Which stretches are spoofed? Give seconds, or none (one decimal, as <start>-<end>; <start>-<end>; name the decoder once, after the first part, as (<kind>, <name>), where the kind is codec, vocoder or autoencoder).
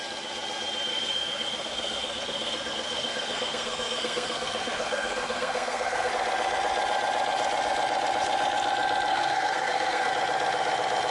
0.9-6.1 (codec, SNAC); 9.1-10.1